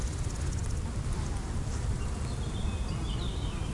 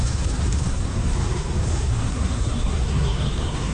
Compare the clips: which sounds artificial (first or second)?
second